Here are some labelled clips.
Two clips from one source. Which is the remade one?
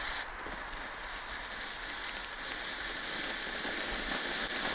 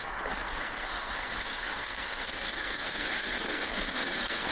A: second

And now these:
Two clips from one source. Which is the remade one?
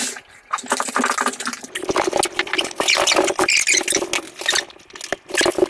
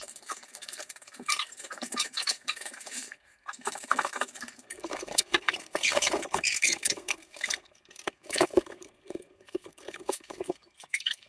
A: second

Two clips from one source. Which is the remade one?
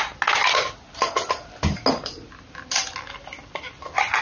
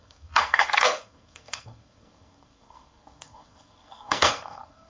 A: second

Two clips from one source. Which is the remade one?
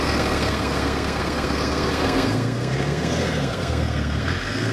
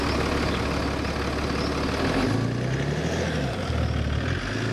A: first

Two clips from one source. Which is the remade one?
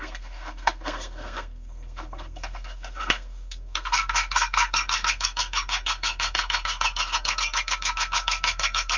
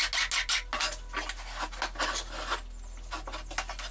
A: first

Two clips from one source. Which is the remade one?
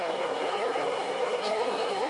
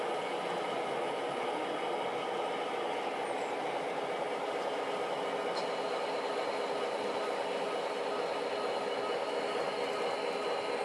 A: first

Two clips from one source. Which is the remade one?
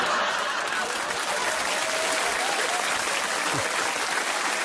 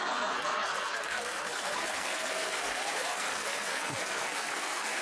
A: second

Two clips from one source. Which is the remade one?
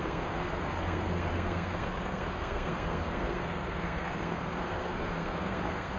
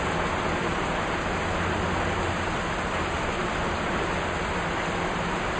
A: first